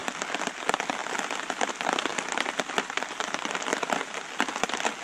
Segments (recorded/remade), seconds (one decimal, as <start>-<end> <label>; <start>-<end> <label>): 0.0-1.0 recorded; 1.0-1.7 remade; 1.7-2.1 recorded; 2.1-3.1 remade; 3.1-3.7 recorded; 3.7-4.2 remade; 4.2-5.0 recorded

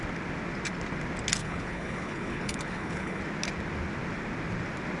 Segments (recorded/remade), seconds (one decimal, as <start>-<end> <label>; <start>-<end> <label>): 0.0-1.4 recorded; 1.4-3.2 remade; 3.2-5.0 recorded